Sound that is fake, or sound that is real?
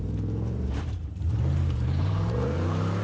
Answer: fake